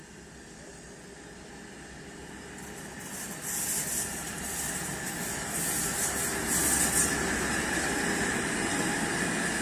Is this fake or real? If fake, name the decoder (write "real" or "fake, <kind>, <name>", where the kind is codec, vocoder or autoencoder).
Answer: real